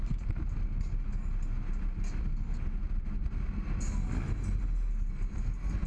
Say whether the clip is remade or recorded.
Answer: recorded